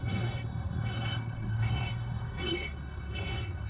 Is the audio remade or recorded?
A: remade